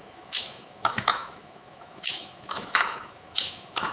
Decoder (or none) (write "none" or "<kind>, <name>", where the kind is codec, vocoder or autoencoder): autoencoder, DAC-VAE